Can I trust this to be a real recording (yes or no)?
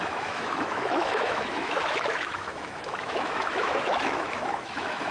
no